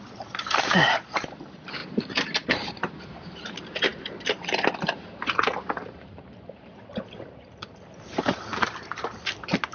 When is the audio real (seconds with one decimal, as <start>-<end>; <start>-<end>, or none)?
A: 8.5-9.7